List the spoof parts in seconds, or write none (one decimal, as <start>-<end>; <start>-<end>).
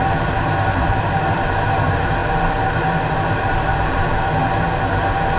0.0-5.4